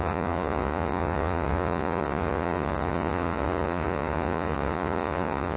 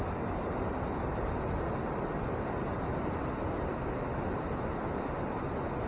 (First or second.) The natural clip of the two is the second